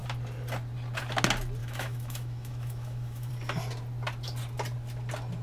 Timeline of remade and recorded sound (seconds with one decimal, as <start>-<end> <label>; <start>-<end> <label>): 0.0-1.6 recorded; 1.6-3.3 remade; 3.3-5.4 recorded

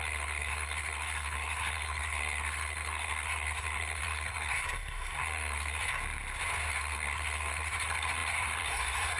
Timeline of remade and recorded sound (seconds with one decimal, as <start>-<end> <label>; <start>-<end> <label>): 0.0-6.0 remade; 6.0-6.7 recorded; 6.7-9.2 remade

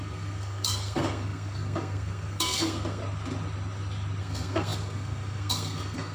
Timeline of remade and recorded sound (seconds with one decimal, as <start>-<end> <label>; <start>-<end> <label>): 0.0-3.0 remade; 3.0-4.2 recorded; 4.2-6.1 remade

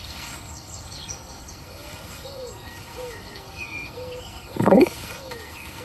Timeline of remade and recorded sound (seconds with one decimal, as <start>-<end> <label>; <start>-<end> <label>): 0.0-5.8 remade

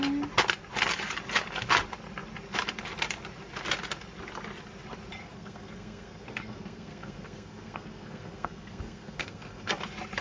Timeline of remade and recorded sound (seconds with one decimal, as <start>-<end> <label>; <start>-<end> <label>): 0.0-5.2 recorded; 5.2-9.7 remade; 9.7-10.2 recorded